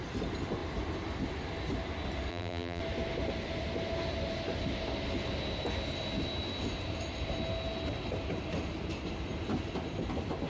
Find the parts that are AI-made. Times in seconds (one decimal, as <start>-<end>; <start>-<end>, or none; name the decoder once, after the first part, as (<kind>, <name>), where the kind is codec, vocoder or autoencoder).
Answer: 2.3-2.8 (vocoder, BigVGAN v2)